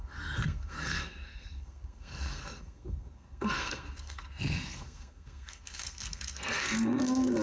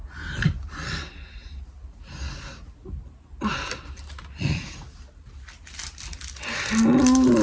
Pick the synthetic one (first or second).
first